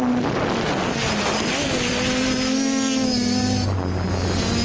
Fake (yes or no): no